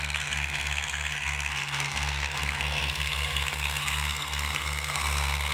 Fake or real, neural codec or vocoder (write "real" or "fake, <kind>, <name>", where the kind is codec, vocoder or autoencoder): fake, codec, SNAC